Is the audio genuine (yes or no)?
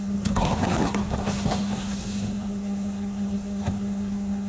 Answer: no